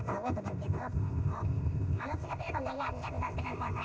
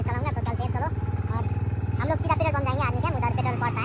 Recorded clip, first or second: second